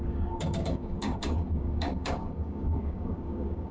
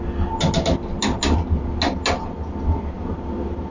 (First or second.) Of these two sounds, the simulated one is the first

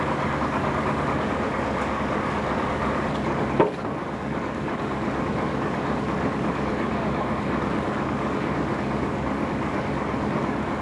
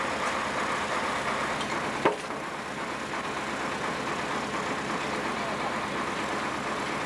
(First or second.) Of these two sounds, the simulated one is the first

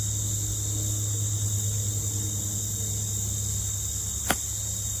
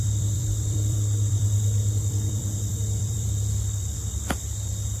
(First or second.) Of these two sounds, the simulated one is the second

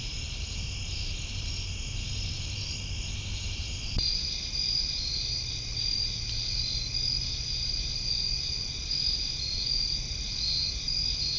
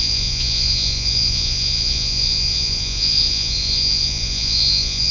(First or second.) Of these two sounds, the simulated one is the second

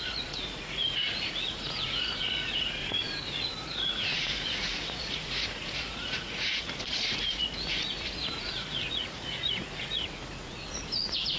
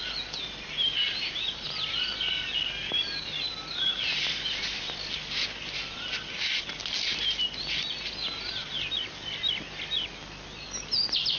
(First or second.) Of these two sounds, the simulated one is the first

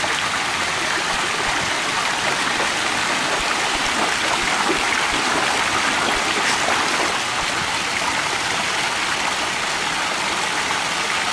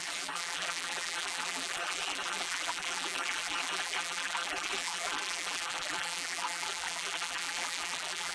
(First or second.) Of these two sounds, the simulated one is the second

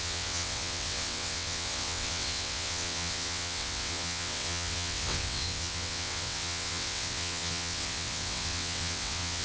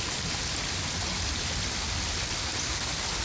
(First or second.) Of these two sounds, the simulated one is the first